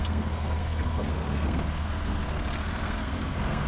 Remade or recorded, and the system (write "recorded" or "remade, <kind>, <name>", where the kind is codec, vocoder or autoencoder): remade, codec, SNAC